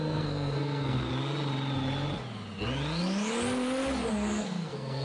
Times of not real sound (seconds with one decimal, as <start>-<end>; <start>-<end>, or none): 0.0-1.1; 4.1-5.0